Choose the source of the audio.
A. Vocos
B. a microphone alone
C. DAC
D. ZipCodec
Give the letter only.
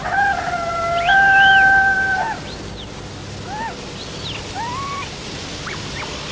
B